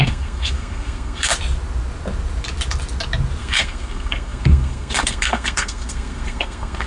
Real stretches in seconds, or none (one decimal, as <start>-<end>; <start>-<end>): 1.3-3.4